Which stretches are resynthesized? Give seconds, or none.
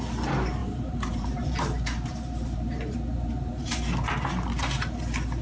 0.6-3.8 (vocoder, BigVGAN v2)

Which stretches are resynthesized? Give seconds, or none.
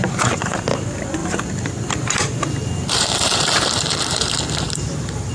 0.0-5.3 (vocoder, BigVGAN v2)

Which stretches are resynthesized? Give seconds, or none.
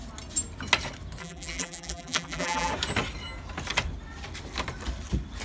1.2-2.7 (vocoder, BigVGAN v2)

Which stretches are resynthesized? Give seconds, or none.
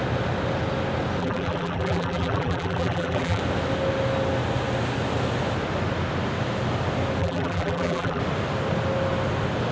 1.2-3.4 (vocoder, BigVGAN v2); 7.2-8.2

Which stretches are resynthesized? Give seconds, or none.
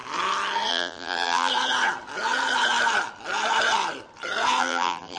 0.7-1.5 (vocoder, BigVGAN v2); 4.6-5.2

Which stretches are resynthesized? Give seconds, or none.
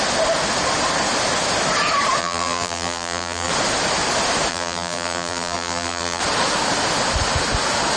2.2-3.5 (vocoder, BigVGAN v2); 4.5-6.2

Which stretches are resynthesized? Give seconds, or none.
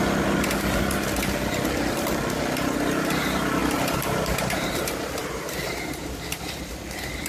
3.6-6.1 (vocoder, BigVGAN v2)